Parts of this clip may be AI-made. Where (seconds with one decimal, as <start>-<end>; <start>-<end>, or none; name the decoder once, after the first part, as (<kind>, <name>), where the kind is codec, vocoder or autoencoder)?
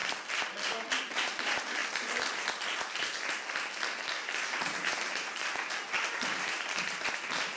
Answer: 1.0-1.8 (vocoder, BigVGAN v2); 4.0-7.6